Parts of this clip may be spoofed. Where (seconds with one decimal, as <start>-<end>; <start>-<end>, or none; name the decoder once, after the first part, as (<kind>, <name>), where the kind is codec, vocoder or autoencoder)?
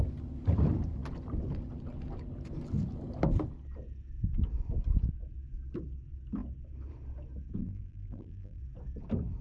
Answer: 7.6-8.6 (vocoder, BigVGAN v2)